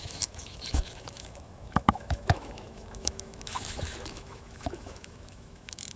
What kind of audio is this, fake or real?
fake